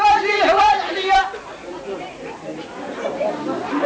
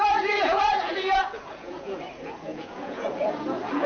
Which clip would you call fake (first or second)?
second